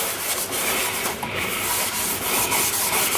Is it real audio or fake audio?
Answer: real